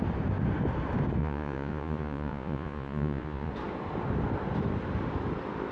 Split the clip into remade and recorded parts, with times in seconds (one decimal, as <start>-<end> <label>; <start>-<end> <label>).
0.0-1.2 recorded; 1.2-3.5 remade; 3.5-5.7 recorded